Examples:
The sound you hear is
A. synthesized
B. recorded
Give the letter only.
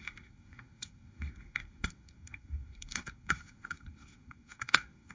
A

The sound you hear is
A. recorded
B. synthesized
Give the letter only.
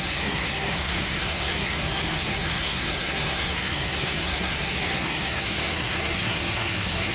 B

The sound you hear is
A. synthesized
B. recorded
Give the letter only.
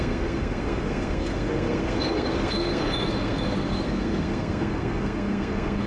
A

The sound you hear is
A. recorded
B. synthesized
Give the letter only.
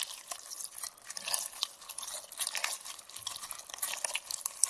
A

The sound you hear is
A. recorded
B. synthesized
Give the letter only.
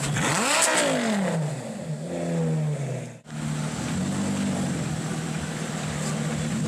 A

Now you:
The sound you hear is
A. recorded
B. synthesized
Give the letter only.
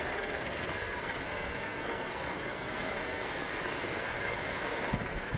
B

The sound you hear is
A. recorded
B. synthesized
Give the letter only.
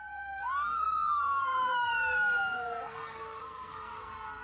B